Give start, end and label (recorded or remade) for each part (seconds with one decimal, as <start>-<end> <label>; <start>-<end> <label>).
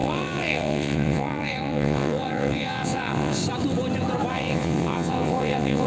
0.0-3.4 remade; 3.4-4.3 recorded; 4.3-5.9 remade